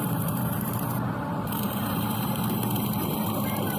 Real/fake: fake